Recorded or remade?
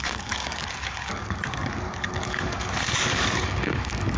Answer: remade